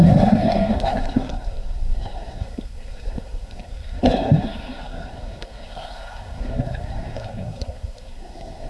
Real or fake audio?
fake